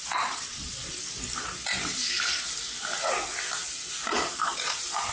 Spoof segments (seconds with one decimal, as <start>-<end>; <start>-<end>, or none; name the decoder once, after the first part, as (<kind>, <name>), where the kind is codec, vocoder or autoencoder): 0.0-0.8 (vocoder, Vocos); 3.9-5.1